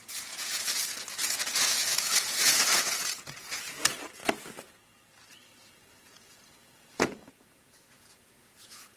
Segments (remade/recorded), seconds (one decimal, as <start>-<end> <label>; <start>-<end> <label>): 0.0-4.2 remade; 4.2-5.7 recorded; 5.7-9.0 remade